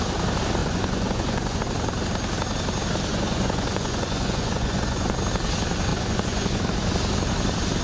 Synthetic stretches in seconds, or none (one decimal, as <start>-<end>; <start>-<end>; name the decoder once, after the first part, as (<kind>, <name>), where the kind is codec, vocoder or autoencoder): 0.6-1.6 (vocoder, Vocos); 3.1-5.2; 5.9-6.6